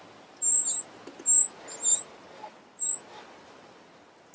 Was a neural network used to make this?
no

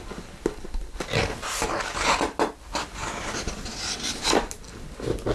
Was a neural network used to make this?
no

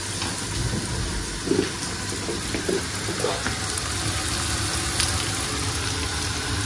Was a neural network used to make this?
no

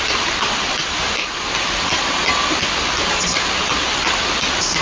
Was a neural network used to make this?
no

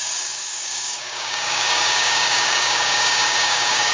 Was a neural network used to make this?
yes